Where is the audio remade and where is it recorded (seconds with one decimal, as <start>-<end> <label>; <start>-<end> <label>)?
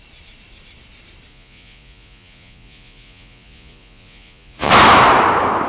0.0-1.3 recorded; 1.3-4.7 remade; 4.7-5.7 recorded